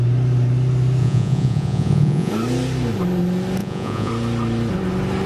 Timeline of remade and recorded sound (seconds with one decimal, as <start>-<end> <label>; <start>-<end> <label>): 0.0-1.0 recorded; 1.0-2.3 remade; 2.3-3.6 recorded; 3.6-4.1 remade; 4.1-5.3 recorded